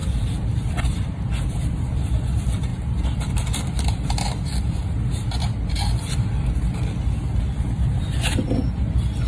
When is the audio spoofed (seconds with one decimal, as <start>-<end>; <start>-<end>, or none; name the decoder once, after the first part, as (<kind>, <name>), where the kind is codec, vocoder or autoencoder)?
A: 0.0-2.7 (vocoder, BigVGAN v2); 7.4-9.3